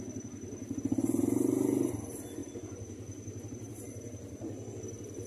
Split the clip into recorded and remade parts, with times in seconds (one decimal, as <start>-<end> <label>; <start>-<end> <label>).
0.0-2.4 recorded; 2.4-4.8 remade; 4.8-5.3 recorded